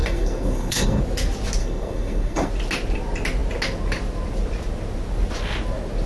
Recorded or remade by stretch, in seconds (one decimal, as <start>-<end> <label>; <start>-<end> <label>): 0.0-1.0 remade; 1.0-1.6 recorded; 1.6-2.5 remade; 2.5-6.1 recorded